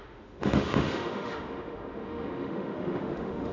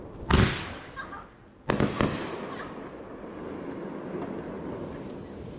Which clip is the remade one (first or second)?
first